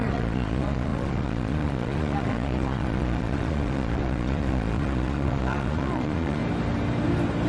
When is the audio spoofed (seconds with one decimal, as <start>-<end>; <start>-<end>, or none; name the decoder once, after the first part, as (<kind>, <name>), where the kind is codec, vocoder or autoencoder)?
0.0-6.4 (vocoder, Vocos)